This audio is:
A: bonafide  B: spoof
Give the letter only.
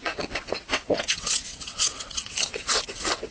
B